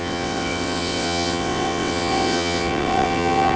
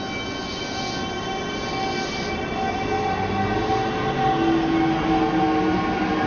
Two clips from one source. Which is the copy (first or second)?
first